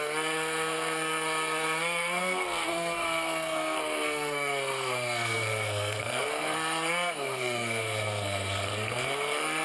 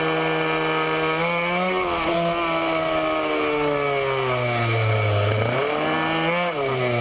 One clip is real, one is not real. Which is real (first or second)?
second